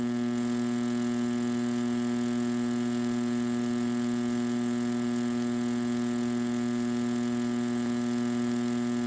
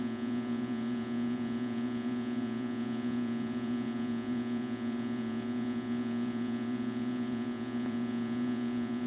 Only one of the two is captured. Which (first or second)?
first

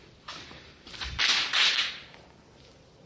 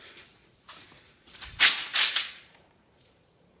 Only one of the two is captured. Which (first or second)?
first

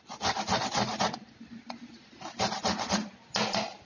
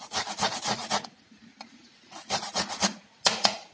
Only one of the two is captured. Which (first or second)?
first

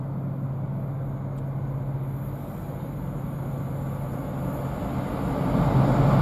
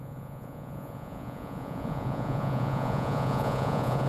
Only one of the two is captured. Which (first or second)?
first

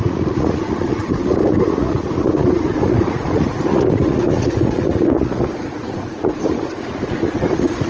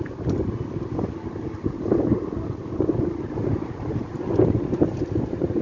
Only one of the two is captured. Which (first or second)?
second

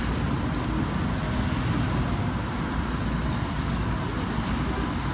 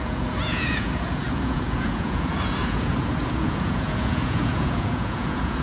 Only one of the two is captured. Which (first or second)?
first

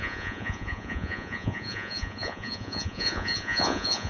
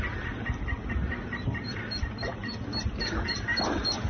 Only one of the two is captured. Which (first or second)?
second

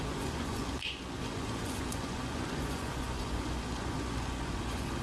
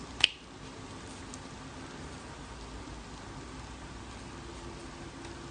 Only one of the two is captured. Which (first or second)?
second